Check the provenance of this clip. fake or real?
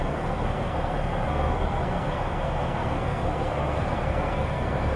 fake